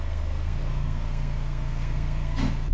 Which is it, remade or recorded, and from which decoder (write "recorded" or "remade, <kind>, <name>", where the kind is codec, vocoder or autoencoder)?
remade, codec, SNAC